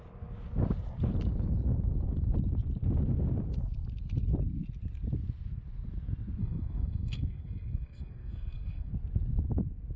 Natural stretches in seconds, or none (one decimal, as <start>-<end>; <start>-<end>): 0.0-6.4; 8.9-10.0